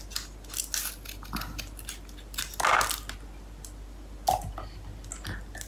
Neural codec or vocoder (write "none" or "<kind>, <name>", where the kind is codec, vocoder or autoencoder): none